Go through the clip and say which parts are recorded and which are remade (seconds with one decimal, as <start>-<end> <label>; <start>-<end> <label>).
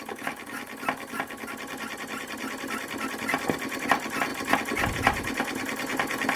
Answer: 0.0-4.3 recorded; 4.3-4.9 remade; 4.9-6.4 recorded